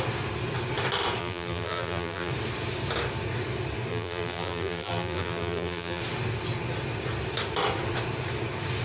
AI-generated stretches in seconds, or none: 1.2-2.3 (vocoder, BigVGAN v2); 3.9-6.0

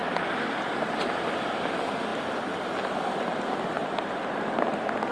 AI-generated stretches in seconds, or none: none

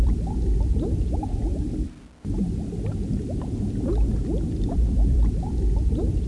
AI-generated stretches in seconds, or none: 0.0-1.5 (vocoder, BigVGAN v2); 2.0-6.3

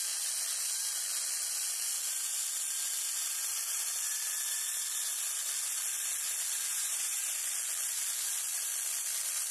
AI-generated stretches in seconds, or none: 6.7-7.3 (vocoder, BigVGAN v2)